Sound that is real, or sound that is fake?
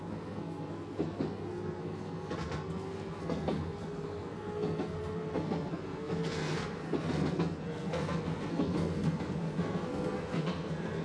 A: fake